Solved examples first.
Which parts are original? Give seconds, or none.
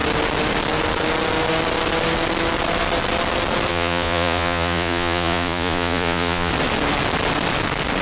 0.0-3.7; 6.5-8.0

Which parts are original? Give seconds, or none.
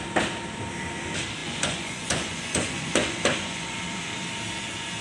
0.0-1.4; 3.8-5.0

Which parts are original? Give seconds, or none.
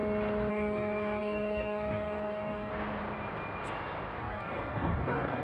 0.0-0.5; 2.7-4.2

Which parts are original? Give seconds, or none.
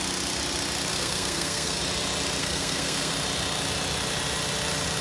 0.0-0.9; 1.8-2.4; 3.1-5.0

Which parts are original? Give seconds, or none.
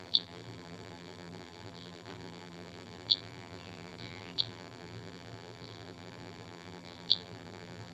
none